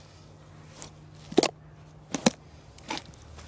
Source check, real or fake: real